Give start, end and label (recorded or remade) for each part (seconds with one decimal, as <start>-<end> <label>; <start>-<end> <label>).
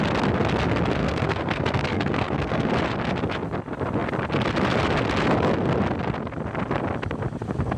0.0-1.0 recorded; 1.0-2.7 remade; 2.7-7.8 recorded